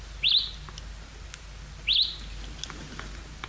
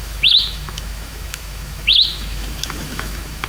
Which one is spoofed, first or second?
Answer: second